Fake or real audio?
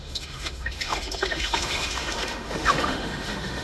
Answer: fake